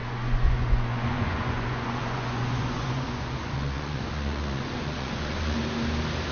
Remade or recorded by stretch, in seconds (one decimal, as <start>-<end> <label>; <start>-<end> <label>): 0.0-5.6 remade; 5.6-6.3 recorded